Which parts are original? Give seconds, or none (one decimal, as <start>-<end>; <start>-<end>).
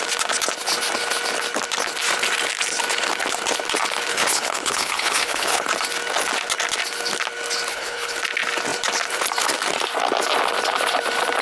0.0-4.1; 5.7-7.7; 8.2-11.4